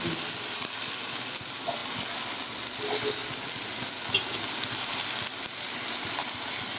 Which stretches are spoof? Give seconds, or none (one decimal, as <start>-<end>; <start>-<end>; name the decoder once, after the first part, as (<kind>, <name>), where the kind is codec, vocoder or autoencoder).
none